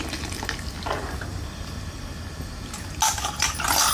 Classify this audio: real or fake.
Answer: real